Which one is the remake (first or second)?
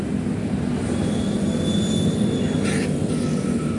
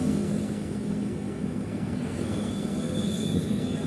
second